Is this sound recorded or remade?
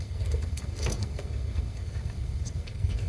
remade